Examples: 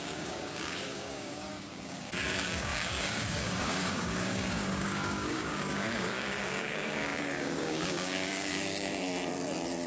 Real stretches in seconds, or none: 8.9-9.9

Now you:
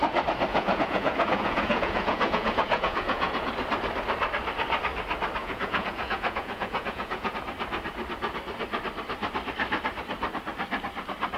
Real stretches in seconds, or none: 0.0-0.5; 3.5-5.4; 7.3-11.4

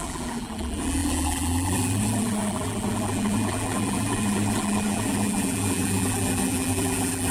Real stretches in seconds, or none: none

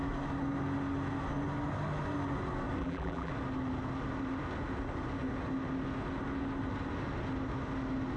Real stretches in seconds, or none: 0.0-2.8; 3.3-8.2

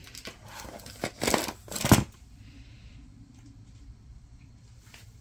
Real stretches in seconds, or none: 0.8-1.6; 4.7-5.2